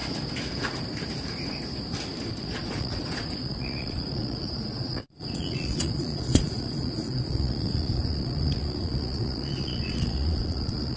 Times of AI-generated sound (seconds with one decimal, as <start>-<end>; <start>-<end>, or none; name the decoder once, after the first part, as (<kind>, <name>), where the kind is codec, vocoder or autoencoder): 2.3-11.0 (vocoder, Vocos)